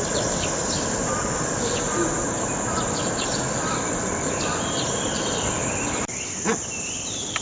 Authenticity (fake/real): real